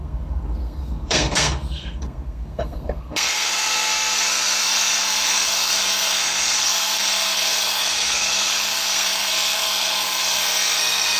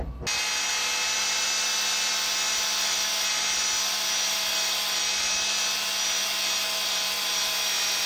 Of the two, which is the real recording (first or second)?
second